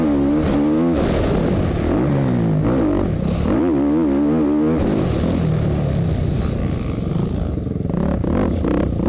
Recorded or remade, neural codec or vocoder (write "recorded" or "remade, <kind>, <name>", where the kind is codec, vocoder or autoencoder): recorded